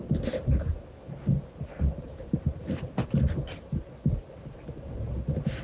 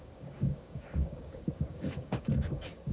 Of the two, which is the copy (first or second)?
second